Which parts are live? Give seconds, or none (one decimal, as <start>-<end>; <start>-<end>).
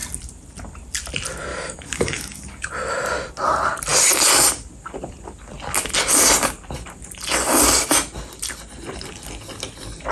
0.0-1.5; 2.7-10.1